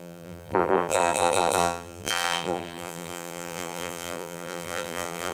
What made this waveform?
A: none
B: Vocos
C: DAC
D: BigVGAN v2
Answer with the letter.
D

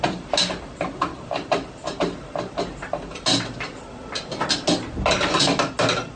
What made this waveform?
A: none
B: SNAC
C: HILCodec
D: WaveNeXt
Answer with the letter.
A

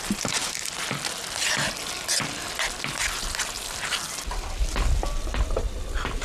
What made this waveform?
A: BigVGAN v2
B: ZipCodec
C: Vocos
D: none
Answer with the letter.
D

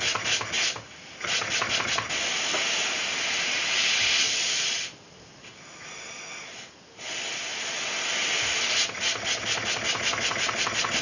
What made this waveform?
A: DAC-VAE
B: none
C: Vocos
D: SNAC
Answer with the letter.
B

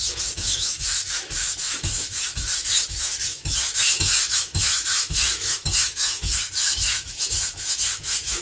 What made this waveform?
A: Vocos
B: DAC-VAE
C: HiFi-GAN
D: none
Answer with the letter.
B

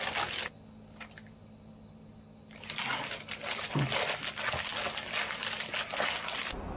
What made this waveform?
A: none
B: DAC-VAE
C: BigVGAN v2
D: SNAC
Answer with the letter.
A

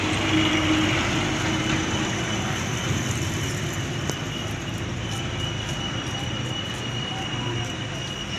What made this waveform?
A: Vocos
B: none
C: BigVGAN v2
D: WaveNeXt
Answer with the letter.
B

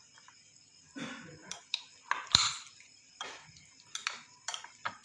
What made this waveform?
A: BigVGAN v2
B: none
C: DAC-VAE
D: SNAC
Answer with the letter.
A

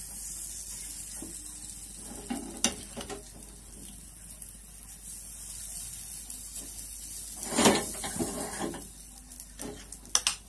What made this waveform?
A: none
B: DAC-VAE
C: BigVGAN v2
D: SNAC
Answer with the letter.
A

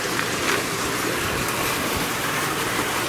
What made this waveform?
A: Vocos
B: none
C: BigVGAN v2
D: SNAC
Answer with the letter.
C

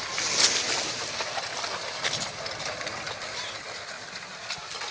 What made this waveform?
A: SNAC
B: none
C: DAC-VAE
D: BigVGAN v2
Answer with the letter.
B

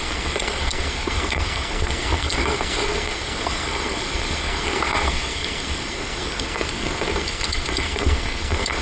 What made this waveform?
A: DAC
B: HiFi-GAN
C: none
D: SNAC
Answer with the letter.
D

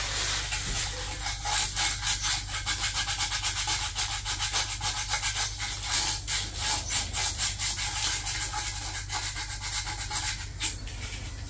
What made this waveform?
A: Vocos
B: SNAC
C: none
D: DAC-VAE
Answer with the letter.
C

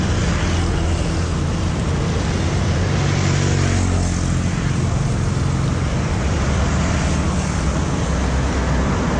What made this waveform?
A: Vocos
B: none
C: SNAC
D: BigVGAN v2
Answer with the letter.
B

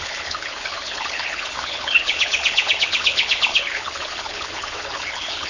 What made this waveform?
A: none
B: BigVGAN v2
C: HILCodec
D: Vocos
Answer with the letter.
C